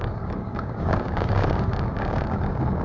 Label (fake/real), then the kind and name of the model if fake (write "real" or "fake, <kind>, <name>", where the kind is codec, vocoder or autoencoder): fake, codec, DAC